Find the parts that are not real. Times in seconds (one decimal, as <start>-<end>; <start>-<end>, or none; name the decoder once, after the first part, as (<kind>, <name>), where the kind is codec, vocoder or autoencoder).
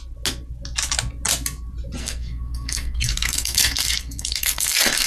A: 2.0-5.1 (codec, SNAC)